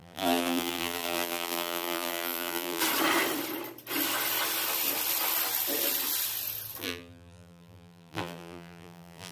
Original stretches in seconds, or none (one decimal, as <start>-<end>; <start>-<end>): 2.8-6.8